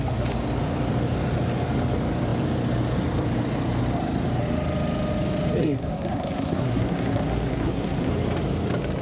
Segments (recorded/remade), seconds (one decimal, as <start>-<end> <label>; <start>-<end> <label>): 0.0-5.6 recorded; 5.6-8.1 remade; 8.1-9.0 recorded